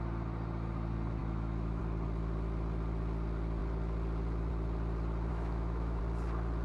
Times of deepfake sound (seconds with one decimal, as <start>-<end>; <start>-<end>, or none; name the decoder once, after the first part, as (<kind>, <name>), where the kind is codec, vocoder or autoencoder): 1.2-1.8 (autoencoder, DAC-VAE); 5.3-6.0